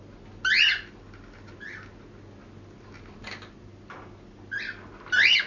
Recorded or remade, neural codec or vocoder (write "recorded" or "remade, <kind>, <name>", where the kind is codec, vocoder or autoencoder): recorded